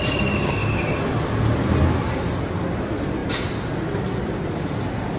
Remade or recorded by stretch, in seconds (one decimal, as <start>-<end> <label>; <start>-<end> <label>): 0.0-5.2 recorded